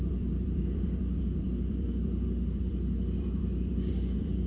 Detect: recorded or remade remade